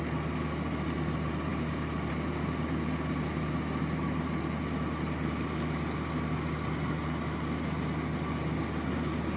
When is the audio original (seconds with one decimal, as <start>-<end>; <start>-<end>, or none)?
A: 0.0-9.4